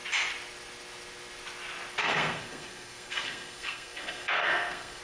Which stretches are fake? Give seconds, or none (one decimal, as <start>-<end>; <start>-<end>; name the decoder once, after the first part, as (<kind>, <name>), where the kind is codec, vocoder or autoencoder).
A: 2.0-5.0 (codec, SNAC)